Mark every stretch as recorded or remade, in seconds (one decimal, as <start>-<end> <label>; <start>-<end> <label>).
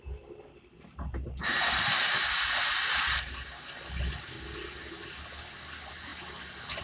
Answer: 0.0-6.8 recorded